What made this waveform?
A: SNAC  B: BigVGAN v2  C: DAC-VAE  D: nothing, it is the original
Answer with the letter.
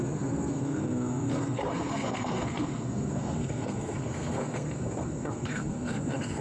A